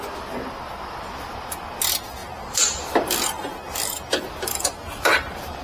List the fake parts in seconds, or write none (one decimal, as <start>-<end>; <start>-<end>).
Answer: 2.2-5.6